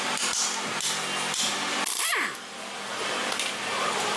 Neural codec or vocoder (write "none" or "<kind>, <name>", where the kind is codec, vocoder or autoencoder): none